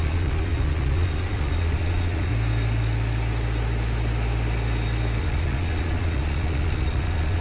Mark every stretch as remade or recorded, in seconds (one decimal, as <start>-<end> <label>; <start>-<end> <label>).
0.0-2.3 remade; 2.3-5.2 recorded; 5.2-7.4 remade